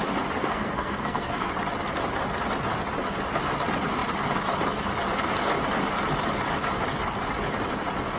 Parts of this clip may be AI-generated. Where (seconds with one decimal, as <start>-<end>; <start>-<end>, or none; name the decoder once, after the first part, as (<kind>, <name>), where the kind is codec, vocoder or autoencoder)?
0.4-1.5 (codec, SNAC)

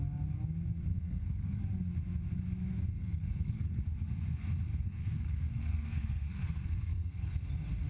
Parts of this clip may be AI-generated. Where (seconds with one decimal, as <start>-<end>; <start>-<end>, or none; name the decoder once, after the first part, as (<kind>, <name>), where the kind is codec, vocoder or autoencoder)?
0.9-1.6 (codec, SNAC); 2.9-3.8; 4.7-7.3

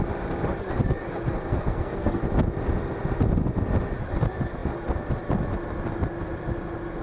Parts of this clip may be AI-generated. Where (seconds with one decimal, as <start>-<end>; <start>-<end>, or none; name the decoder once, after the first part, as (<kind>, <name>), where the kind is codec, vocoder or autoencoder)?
1.5-2.2 (codec, SNAC)

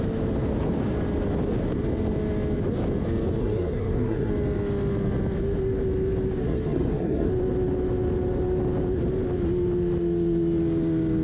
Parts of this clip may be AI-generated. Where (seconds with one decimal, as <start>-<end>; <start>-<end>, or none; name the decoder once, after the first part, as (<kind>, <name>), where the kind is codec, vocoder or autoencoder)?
3.4-4.3 (codec, SNAC); 6.4-7.3